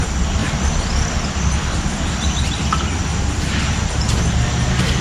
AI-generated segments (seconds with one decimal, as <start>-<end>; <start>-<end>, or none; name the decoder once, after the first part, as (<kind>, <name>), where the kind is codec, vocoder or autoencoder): none